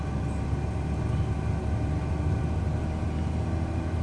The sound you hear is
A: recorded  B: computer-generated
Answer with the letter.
A